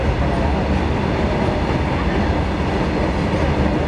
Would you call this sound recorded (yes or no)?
yes